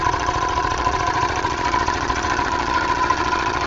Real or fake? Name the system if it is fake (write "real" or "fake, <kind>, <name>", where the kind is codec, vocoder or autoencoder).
fake, vocoder, Vocos